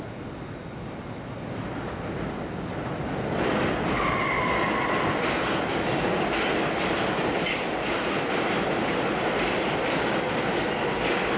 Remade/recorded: recorded